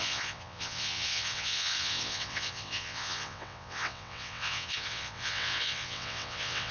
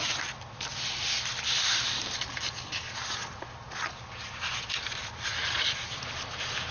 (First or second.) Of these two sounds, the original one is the second